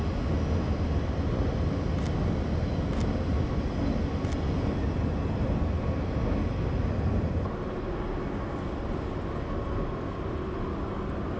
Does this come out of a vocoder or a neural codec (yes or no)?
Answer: no